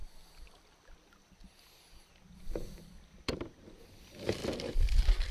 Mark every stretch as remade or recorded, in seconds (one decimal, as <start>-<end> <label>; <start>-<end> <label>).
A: 0.0-3.2 recorded; 3.2-5.3 remade